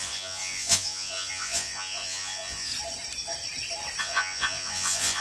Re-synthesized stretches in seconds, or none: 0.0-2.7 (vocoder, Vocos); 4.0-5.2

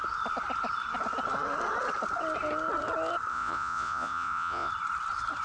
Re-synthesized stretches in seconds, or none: 3.3-4.7 (vocoder, Vocos)

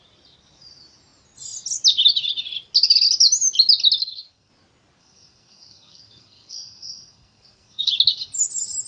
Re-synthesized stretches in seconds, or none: 4.0-4.5 (codec, SNAC); 5.0-7.9

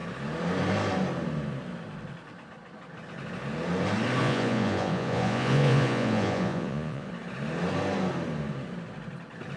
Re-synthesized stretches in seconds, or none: 4.2-7.1 (vocoder, Vocos)

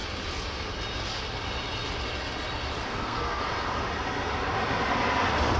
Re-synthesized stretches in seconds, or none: 2.9-3.4 (codec, SNAC)